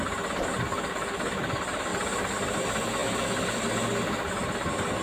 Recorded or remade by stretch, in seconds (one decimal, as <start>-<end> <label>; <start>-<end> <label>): 0.0-1.9 recorded; 1.9-2.6 remade; 2.6-5.0 recorded